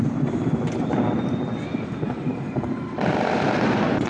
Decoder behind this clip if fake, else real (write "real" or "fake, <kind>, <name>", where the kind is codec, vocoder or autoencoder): real